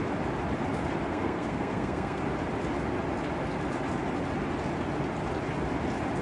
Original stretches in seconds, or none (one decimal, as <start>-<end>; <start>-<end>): 0.0-1.1; 2.2-6.2